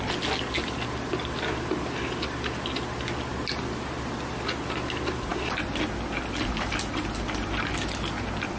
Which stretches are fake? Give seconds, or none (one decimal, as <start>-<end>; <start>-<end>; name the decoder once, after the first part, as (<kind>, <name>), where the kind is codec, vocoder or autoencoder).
none